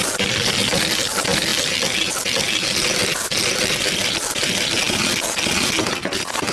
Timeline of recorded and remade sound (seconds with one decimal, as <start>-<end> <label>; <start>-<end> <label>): 0.0-6.5 recorded